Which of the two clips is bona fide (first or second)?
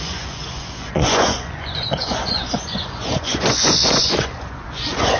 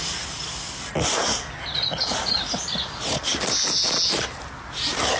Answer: second